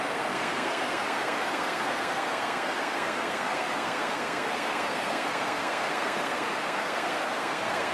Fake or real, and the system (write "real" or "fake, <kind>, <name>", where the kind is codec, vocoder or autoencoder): fake, codec, SNAC